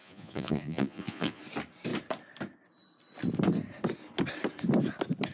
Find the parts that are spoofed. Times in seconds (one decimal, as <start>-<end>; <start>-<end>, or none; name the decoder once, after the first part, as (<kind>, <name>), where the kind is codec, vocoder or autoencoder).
0.0-1.4 (vocoder, Vocos)